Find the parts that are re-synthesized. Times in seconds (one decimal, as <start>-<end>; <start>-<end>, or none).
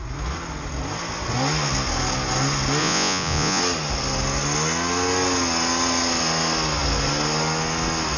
2.8-3.6